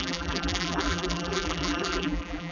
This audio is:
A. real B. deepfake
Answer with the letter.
B